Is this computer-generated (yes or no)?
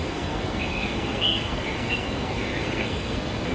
yes